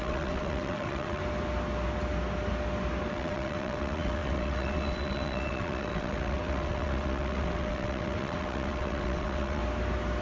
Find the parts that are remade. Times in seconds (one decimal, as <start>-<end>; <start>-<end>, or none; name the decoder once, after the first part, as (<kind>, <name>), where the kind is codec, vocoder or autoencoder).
0.0-1.2 (vocoder, WaveNeXt); 3.1-9.6